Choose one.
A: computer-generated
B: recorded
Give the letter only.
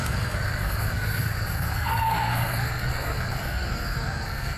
A